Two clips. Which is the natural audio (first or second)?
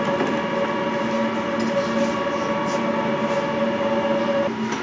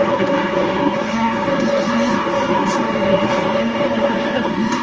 first